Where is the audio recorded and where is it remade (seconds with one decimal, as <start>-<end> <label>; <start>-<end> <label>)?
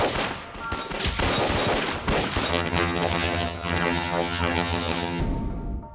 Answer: 0.0-2.5 recorded; 2.5-5.2 remade; 5.2-5.9 recorded